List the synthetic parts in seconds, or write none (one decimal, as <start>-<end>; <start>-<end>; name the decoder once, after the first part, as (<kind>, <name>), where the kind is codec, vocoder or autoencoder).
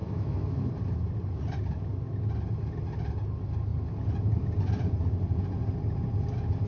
0.0-0.7 (autoencoder, DAC-VAE)